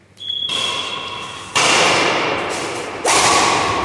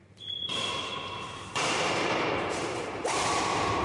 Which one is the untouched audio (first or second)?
first